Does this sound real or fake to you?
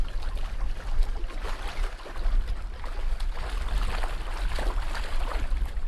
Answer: real